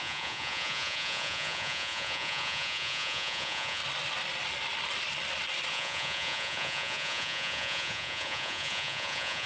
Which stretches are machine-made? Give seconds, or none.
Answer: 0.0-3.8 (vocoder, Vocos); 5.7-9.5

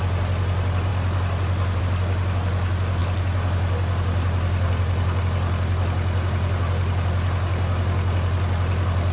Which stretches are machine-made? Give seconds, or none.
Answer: none